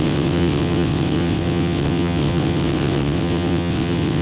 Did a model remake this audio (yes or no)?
yes